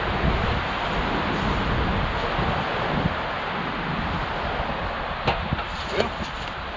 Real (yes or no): yes